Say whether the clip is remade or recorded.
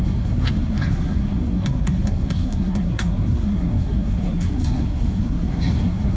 remade